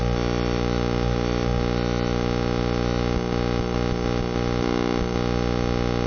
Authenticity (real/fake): real